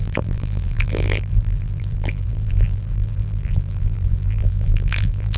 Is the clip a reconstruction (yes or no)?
yes